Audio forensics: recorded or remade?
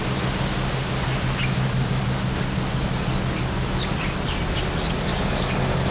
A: recorded